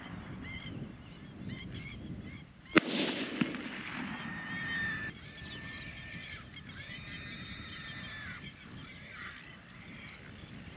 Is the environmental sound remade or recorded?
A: recorded